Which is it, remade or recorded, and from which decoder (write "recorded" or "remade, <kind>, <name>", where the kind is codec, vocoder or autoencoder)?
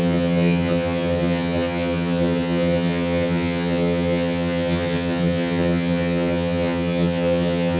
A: remade, vocoder, HiFi-GAN